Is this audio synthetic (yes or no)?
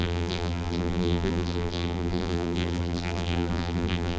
yes